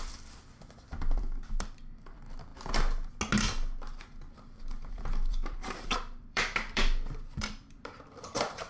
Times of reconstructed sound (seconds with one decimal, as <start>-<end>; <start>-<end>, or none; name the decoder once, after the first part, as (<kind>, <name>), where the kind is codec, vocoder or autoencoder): 0.0-2.5 (vocoder, BigVGAN v2); 4.9-8.7